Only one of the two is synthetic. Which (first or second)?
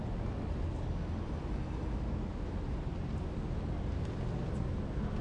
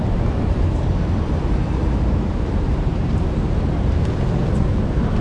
second